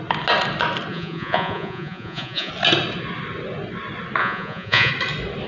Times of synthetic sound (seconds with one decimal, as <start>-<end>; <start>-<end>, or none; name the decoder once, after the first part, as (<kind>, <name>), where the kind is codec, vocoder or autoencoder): 0.9-2.5 (vocoder, Vocos); 4.2-4.9